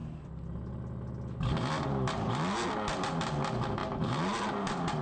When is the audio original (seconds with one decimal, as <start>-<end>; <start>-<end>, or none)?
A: 0.0-5.0